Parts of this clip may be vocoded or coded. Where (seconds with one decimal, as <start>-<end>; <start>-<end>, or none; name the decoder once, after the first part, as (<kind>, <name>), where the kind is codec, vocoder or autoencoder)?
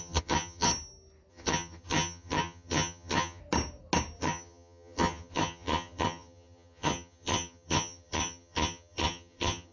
0.0-0.7 (vocoder, HiFi-GAN); 1.3-3.4; 4.2-9.7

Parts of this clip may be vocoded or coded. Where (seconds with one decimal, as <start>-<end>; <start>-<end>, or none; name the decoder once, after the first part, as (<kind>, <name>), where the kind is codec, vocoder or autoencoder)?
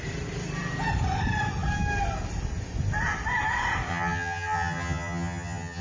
3.9-5.8 (vocoder, HiFi-GAN)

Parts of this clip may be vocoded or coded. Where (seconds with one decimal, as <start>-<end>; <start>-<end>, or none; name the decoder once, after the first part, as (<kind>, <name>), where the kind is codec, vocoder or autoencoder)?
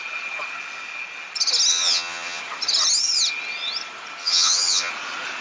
1.7-2.4 (vocoder, HiFi-GAN); 4.2-4.9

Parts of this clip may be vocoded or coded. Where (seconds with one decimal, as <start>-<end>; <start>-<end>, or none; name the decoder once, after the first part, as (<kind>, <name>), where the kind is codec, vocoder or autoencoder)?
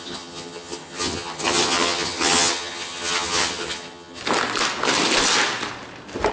0.0-4.2 (vocoder, HiFi-GAN)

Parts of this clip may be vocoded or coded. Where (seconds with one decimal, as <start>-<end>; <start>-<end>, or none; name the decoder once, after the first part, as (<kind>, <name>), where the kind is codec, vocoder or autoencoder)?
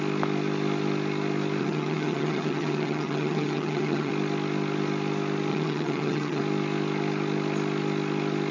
1.6-4.1 (vocoder, HiFi-GAN); 5.5-6.4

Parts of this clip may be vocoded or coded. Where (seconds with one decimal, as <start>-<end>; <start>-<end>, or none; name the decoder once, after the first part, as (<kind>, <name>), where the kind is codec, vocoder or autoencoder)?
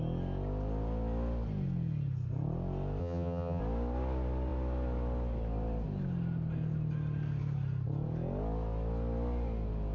3.0-3.6 (vocoder, HiFi-GAN)